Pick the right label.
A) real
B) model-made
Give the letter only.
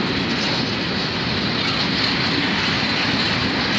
A